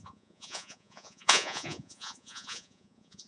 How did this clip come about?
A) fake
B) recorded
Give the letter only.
A